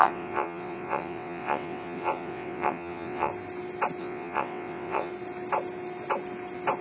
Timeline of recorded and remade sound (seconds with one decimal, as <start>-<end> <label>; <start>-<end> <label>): 0.0-3.3 remade; 3.3-4.0 recorded; 4.0-5.1 remade; 5.1-6.8 recorded

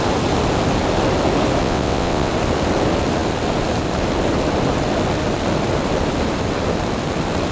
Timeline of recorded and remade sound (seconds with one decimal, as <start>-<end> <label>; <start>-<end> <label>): 0.0-1.6 recorded; 1.6-2.3 remade; 2.3-7.5 recorded